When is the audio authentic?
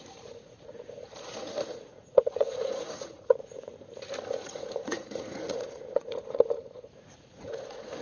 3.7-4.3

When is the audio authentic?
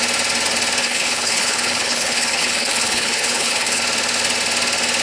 0.0-0.8; 3.8-5.0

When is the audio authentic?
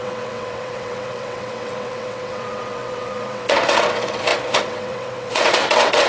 none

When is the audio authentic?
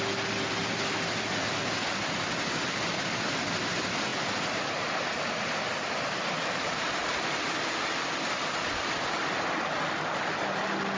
0.0-11.0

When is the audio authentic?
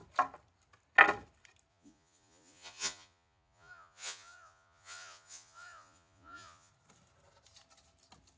0.0-1.7; 6.7-8.4